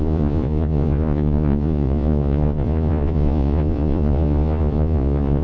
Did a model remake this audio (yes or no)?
yes